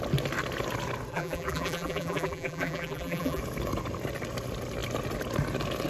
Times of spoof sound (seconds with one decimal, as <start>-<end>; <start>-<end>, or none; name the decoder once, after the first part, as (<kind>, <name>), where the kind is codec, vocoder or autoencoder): 1.1-3.4 (vocoder, BigVGAN v2)